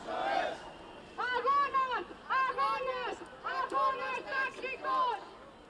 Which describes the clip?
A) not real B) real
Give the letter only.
B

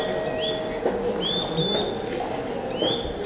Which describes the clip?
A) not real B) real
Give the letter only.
B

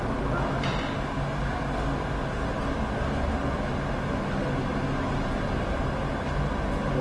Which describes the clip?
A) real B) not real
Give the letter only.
A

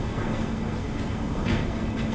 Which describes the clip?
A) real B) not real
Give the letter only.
B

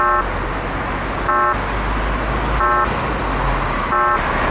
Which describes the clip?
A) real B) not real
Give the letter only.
A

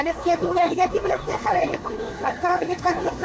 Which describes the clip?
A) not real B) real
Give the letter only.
A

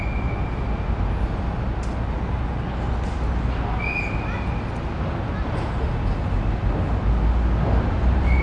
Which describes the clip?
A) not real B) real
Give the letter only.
B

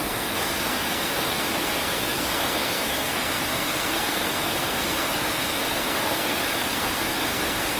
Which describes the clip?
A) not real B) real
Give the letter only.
A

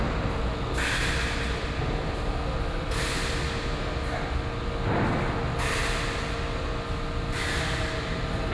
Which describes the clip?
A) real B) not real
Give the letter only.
A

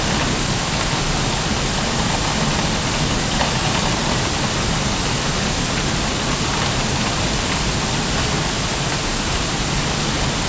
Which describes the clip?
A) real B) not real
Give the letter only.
A